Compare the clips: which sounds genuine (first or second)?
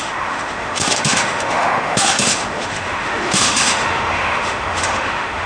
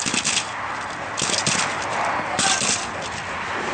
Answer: second